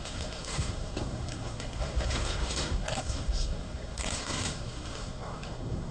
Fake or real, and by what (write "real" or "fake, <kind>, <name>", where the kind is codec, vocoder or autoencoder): fake, codec, SNAC